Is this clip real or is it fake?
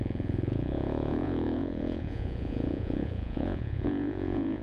fake